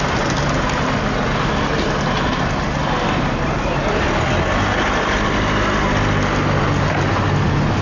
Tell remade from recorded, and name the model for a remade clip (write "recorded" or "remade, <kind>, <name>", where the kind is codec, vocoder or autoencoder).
recorded